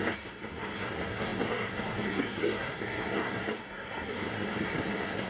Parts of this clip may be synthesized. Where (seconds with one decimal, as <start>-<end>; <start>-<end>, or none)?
0.0-5.3

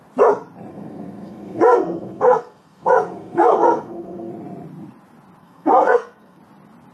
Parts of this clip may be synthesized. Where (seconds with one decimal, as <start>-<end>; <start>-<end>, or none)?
0.7-4.3; 5.4-6.4

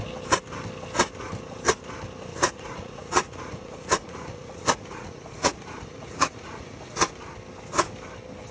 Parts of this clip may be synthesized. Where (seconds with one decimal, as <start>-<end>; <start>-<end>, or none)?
2.3-7.1

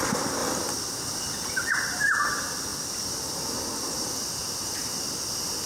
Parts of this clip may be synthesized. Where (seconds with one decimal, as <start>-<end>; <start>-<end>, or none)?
0.4-1.7

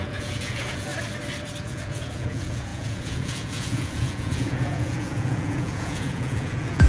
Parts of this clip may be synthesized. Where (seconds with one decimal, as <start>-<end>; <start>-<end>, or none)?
0.0-0.9; 1.6-6.9

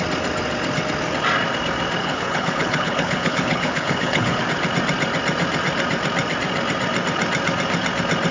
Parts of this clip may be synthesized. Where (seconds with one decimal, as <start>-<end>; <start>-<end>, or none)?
2.0-4.4

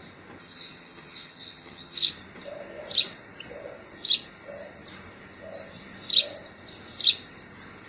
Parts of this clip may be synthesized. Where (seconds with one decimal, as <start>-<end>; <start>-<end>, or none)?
0.4-2.1